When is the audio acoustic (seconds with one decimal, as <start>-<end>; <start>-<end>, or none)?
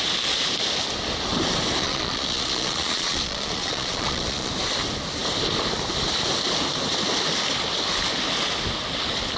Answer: 0.0-1.8; 4.5-9.4